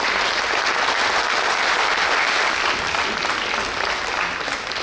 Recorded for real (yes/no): yes